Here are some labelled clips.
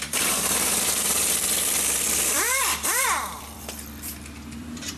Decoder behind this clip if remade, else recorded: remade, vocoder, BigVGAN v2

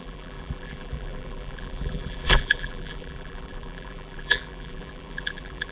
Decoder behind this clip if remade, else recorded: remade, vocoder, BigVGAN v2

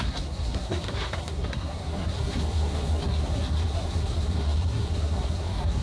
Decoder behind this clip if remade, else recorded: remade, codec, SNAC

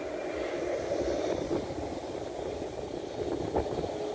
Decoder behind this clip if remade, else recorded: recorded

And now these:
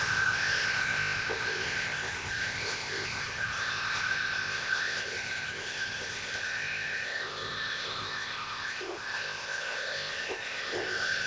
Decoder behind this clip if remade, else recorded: remade, codec, ZipCodec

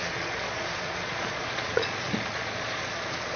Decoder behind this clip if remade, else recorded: remade, vocoder, Vocos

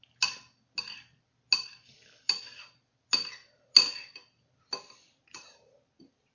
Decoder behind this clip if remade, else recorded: recorded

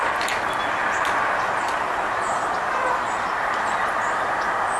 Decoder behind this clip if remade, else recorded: recorded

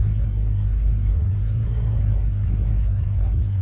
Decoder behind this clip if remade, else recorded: remade, codec, SNAC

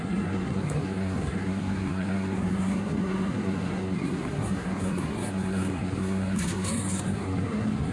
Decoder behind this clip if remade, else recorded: remade, codec, SNAC